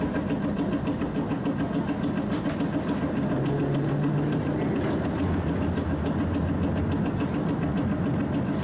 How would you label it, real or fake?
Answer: real